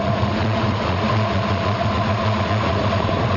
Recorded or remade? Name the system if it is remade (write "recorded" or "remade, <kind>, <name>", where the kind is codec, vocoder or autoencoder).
remade, vocoder, Vocos